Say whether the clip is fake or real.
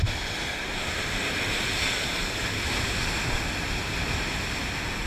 fake